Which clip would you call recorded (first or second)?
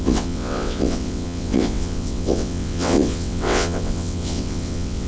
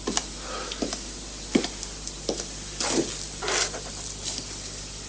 second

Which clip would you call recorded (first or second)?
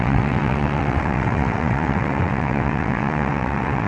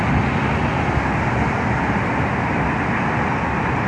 second